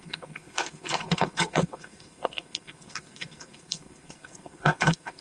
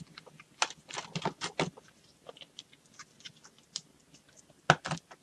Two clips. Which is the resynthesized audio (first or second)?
first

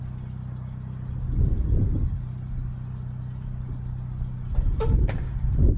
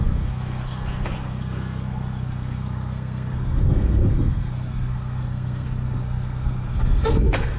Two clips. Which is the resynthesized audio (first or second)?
second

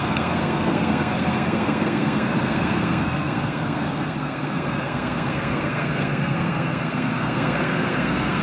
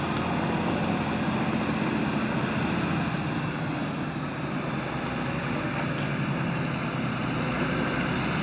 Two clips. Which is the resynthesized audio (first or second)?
first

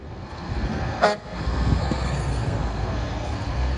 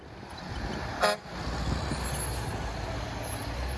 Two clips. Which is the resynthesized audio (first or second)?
first